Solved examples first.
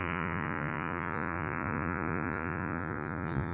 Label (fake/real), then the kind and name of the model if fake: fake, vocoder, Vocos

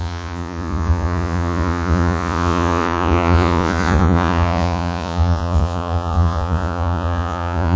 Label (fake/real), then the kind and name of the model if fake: fake, vocoder, Vocos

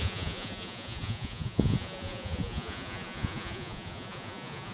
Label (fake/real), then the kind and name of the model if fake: fake, vocoder, Vocos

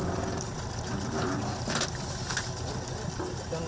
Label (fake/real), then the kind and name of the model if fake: real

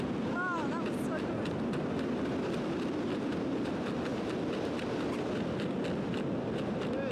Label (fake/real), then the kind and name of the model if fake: real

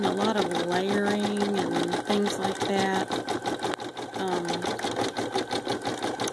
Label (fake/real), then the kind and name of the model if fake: real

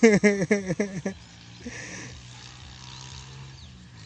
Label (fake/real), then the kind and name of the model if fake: real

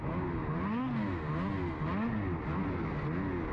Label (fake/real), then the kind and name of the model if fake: real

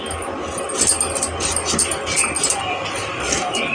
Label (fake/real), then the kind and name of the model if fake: real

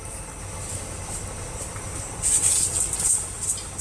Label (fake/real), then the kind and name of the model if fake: real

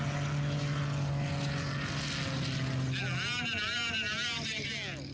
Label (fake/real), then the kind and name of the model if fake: real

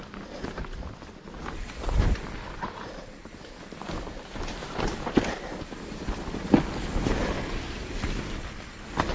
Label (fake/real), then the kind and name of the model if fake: real